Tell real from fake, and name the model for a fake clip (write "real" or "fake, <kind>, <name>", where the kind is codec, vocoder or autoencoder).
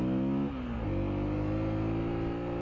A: real